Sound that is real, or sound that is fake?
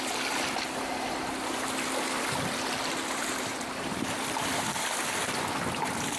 real